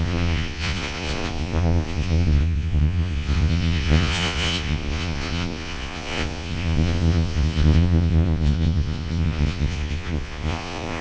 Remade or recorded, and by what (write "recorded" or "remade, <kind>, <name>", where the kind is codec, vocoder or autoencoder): remade, vocoder, Vocos